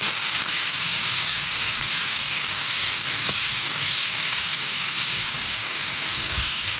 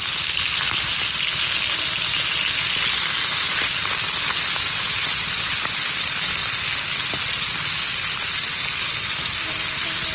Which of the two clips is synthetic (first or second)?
first